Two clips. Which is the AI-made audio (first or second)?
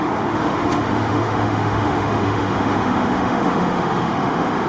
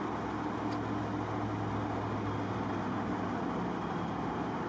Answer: first